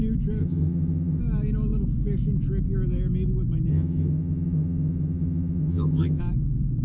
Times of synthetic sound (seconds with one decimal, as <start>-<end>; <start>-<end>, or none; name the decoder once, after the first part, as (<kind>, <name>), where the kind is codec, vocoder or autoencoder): 0.4-1.2 (vocoder, HiFi-GAN); 3.7-6.2